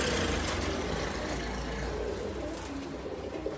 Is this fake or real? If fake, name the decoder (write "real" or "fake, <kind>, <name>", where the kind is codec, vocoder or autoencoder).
real